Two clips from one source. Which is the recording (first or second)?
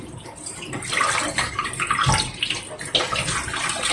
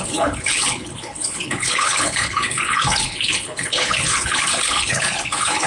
first